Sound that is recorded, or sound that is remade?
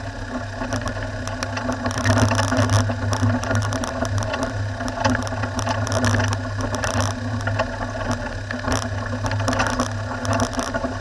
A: recorded